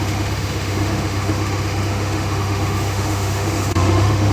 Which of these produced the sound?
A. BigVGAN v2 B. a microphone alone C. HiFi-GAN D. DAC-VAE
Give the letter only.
D